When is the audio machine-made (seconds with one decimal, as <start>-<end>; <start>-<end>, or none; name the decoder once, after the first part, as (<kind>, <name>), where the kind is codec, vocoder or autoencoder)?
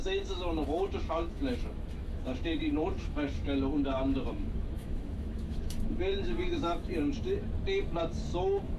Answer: 0.0-7.4 (autoencoder, DAC-VAE); 8.0-8.8